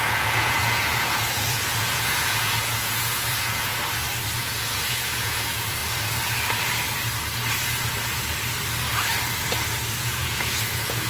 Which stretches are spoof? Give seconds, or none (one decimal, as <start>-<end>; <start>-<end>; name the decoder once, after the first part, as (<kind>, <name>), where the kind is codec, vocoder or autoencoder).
0.0-3.7 (vocoder, Vocos); 4.4-5.8; 10.0-11.1